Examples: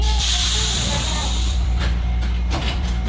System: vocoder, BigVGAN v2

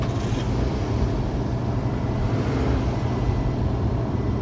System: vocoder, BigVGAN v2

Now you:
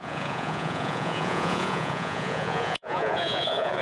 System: vocoder, Vocos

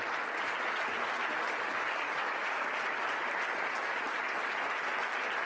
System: none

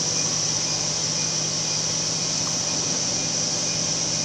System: none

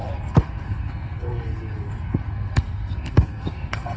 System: codec, SNAC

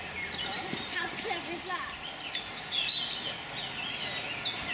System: none